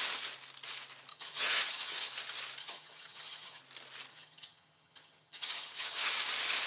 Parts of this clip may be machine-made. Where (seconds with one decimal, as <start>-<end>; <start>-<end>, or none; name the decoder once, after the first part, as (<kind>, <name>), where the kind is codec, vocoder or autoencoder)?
1.1-2.1 (vocoder, HiFi-GAN); 2.6-3.6; 4.1-6.1